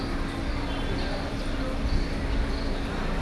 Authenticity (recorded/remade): recorded